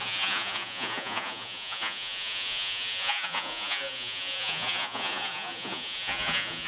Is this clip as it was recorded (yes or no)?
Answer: no